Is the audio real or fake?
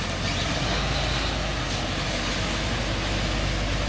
real